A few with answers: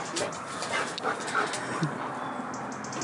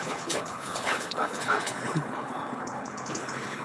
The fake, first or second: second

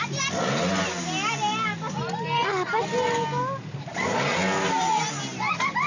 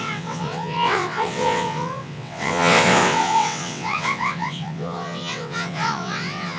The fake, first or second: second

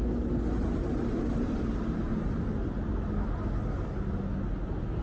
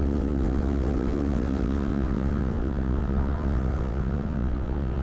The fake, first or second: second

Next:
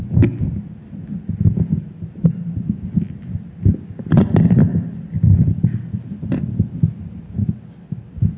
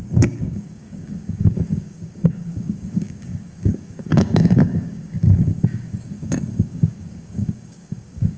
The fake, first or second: second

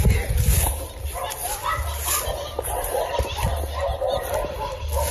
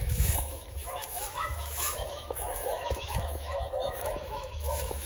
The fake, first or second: second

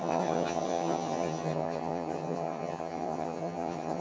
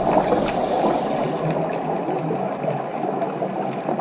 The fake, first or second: first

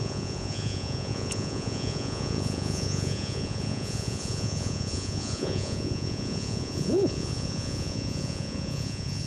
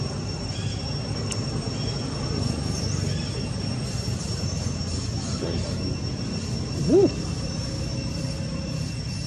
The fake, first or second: first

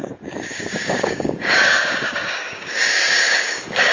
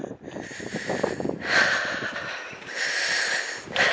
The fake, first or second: first